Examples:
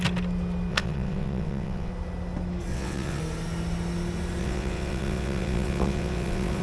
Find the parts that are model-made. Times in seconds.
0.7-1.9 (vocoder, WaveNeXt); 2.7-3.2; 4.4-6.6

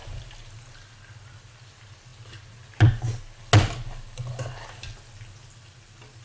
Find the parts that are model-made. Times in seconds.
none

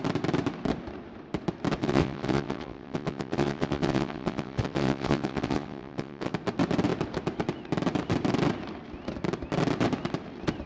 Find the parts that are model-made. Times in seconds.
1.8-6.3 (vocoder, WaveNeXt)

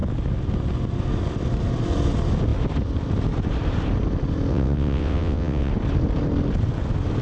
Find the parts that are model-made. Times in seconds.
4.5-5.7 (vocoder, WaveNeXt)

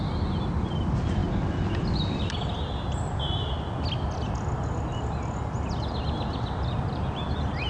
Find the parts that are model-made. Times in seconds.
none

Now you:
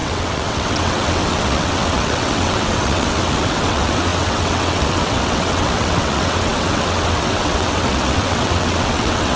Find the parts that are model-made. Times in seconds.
0.0-9.4 (vocoder, WaveNeXt)